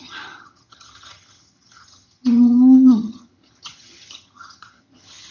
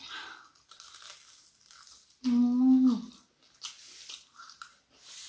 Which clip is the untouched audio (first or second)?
second